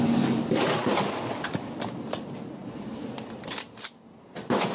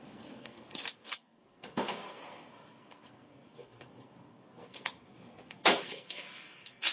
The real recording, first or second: first